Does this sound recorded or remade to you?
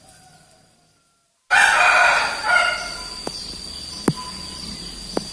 recorded